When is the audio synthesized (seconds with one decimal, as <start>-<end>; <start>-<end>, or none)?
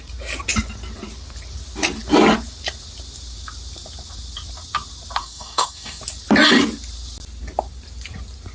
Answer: 5.2-6.0